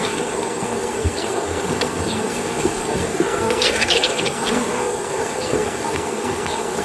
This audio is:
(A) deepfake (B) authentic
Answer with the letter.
A